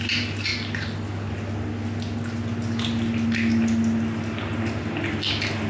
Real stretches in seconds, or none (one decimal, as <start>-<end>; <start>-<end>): 0.0-5.7